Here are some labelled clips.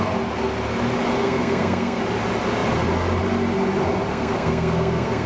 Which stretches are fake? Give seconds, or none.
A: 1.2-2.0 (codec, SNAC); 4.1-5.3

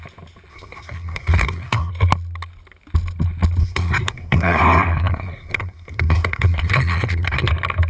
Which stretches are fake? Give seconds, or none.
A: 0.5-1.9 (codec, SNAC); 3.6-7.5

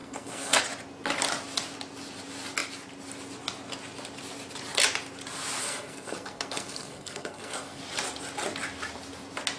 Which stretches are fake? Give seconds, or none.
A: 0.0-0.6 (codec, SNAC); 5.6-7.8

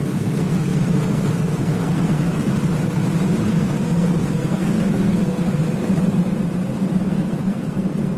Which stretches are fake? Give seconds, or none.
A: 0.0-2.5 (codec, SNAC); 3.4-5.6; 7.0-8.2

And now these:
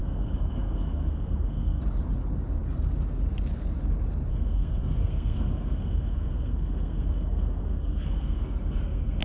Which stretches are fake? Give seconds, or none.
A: 0.0-1.8 (codec, SNAC); 4.3-9.2

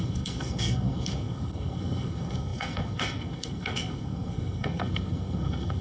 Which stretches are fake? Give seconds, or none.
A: 0.0-5.8 (codec, SNAC)

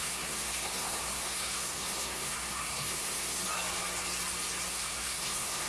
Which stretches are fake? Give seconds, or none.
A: 0.0-3.4 (codec, SNAC); 4.7-5.7

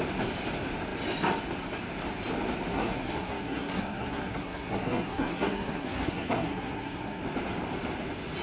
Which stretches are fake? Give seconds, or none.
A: 2.7-7.2 (codec, SNAC)